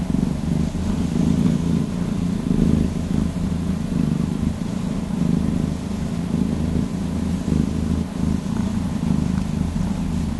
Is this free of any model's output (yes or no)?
yes